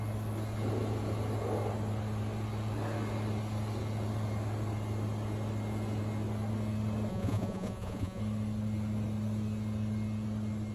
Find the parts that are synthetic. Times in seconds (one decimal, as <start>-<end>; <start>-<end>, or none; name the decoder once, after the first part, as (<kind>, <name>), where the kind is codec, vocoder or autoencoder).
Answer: 7.1-8.2 (vocoder, Vocos)